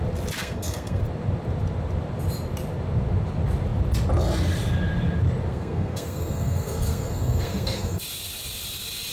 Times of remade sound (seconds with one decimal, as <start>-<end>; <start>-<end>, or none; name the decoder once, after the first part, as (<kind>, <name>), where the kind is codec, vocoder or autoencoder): 0.4-1.0 (codec, SNAC); 5.5-8.0